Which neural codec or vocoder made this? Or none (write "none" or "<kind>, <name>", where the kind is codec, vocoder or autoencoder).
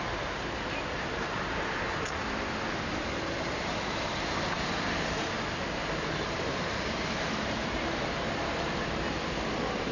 vocoder, BigVGAN v2